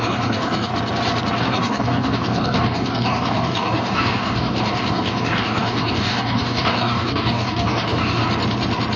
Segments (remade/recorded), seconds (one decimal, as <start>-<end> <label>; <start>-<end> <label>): 0.0-0.7 remade; 0.7-1.4 recorded; 1.4-8.2 remade; 8.2-9.0 recorded